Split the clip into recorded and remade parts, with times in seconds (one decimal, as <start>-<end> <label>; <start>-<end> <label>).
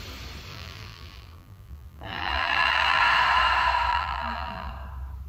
0.0-0.5 recorded; 0.5-3.0 remade; 3.0-3.9 recorded; 3.9-4.7 remade; 4.7-5.3 recorded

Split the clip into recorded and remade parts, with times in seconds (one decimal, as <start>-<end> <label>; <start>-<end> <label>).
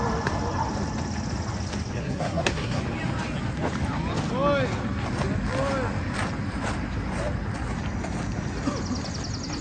0.0-2.0 recorded; 2.0-2.8 remade; 2.8-9.6 recorded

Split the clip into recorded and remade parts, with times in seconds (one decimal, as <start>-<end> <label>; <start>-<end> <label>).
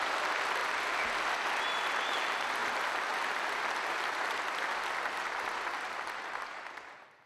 0.0-0.6 recorded; 0.6-1.2 remade; 1.2-2.6 recorded; 2.6-4.6 remade; 4.6-7.3 recorded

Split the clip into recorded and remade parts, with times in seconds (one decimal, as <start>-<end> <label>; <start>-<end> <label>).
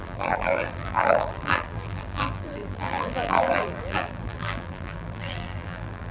0.0-6.1 remade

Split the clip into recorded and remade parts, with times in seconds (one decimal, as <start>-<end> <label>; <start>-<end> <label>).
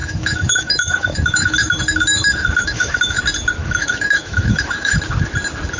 0.0-3.2 remade; 3.2-3.6 recorded; 3.6-5.0 remade; 5.0-5.8 recorded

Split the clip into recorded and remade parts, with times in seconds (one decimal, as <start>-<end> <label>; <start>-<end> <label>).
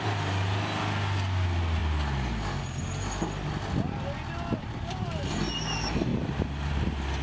0.0-6.1 recorded; 6.1-6.7 remade; 6.7-7.2 recorded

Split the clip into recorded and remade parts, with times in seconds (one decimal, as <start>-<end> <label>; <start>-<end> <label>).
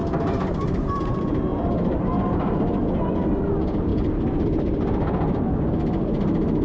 0.0-1.0 remade; 1.0-1.5 recorded; 1.5-3.5 remade; 3.5-3.9 recorded; 3.9-5.4 remade; 5.4-6.6 recorded